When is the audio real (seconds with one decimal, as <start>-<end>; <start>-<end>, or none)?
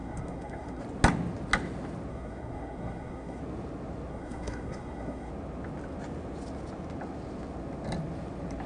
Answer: 0.8-2.1; 3.4-4.1; 5.3-8.7